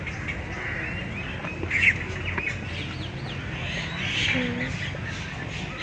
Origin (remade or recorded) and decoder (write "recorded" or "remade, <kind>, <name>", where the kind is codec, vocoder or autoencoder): recorded